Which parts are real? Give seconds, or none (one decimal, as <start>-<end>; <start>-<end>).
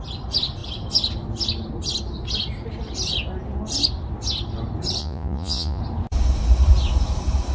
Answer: 0.0-5.0; 5.8-7.5